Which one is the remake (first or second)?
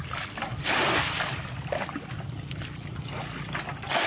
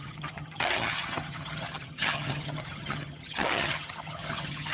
second